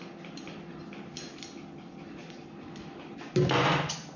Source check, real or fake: real